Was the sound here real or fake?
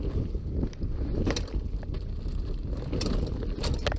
real